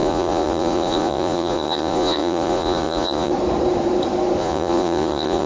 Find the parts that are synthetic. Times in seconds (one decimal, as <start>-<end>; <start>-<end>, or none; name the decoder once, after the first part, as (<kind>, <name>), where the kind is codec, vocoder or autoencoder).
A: 0.0-3.3 (vocoder, Vocos); 4.4-5.5